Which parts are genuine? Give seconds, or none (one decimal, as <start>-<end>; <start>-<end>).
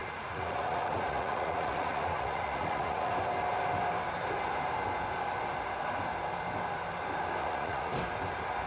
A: 3.1-7.4; 7.9-8.7